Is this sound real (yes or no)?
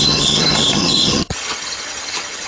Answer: no